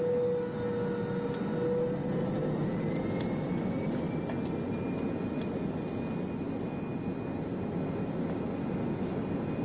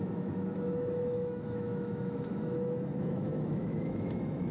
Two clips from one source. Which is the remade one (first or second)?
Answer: second